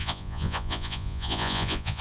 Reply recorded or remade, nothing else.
remade